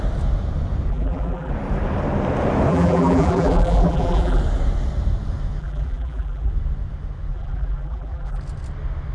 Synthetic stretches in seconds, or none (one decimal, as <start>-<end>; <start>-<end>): 0.9-1.5; 2.7-4.4; 5.6-6.5; 7.3-8.4